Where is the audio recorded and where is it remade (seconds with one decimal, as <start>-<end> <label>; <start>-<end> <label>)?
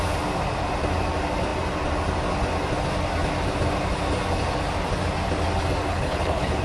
0.0-5.9 recorded; 5.9-6.6 remade